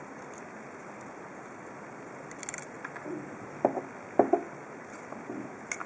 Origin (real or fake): real